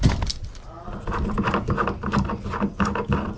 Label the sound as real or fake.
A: real